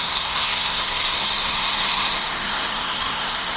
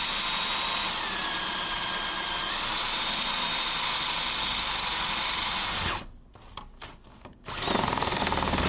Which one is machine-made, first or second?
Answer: first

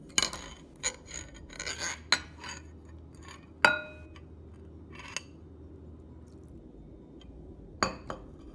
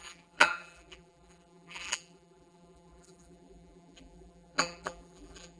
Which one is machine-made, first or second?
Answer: second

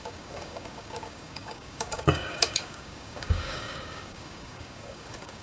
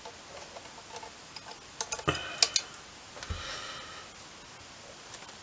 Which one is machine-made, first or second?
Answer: first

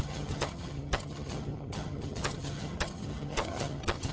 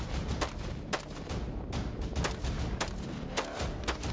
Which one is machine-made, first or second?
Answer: first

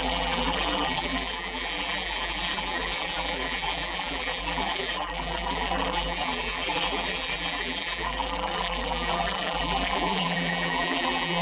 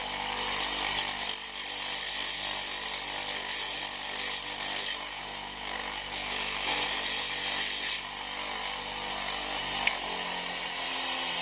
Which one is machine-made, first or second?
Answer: first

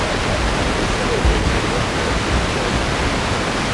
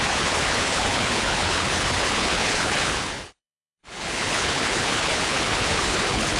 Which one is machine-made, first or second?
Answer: second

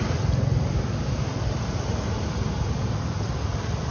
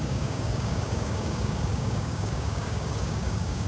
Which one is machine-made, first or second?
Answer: second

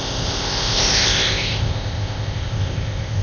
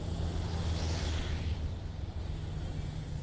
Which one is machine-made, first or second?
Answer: first